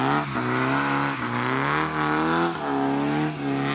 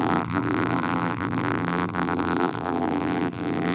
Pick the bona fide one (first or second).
first